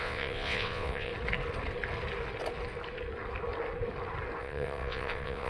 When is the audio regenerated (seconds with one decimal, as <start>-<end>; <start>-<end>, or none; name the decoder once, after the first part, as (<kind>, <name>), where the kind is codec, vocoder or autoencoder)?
0.0-1.1 (vocoder, WaveNeXt); 4.4-5.5